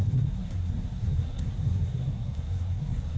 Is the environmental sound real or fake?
fake